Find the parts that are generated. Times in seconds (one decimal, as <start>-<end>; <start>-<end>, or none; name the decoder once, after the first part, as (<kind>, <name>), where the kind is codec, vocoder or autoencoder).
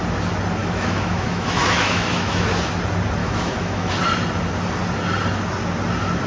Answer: 0.6-2.7 (autoencoder, DAC-VAE); 3.2-3.9